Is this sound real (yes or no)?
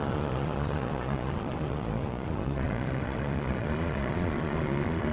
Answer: no